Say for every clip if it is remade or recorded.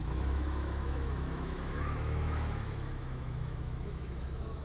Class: remade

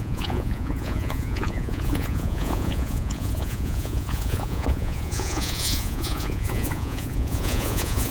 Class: remade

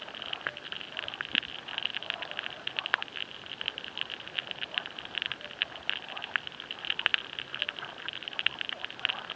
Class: recorded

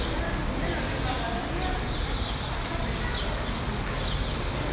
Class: recorded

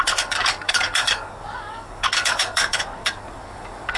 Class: remade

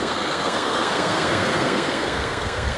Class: remade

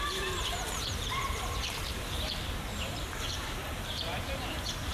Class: remade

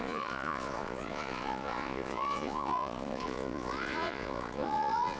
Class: remade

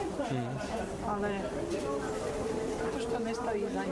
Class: recorded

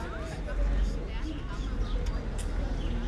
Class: recorded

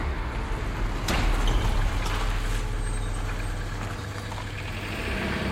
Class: recorded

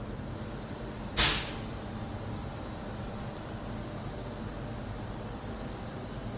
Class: remade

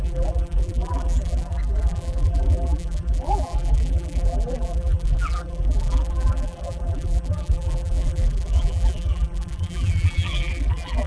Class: remade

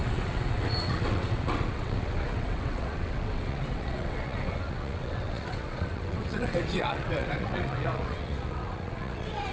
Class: remade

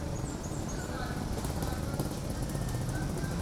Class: recorded